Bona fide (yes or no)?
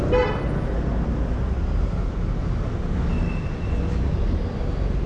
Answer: yes